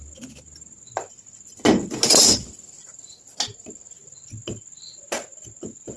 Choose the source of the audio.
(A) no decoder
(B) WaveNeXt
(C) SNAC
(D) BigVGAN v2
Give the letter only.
A